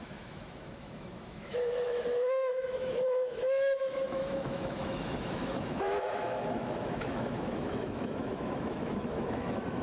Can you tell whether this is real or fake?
fake